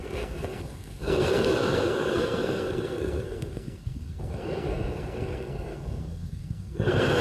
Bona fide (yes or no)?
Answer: no